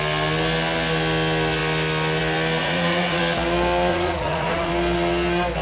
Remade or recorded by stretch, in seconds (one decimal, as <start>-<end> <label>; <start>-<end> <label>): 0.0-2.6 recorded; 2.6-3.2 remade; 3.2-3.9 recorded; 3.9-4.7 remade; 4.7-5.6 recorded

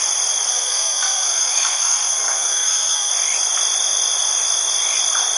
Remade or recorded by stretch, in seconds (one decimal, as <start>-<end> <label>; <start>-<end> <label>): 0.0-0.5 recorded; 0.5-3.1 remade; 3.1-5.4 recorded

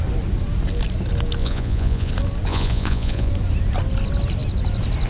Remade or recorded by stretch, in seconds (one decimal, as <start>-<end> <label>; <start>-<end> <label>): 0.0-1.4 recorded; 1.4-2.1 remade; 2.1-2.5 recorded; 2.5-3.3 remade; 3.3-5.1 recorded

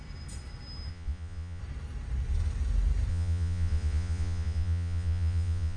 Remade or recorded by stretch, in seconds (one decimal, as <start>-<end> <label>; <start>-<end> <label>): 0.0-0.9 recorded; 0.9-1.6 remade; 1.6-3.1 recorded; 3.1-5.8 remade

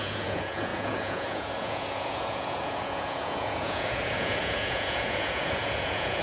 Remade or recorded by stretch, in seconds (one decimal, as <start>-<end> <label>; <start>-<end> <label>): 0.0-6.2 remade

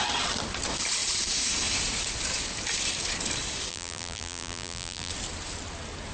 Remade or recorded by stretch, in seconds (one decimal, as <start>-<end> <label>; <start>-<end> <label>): 0.0-3.7 recorded; 3.7-5.1 remade; 5.1-6.1 recorded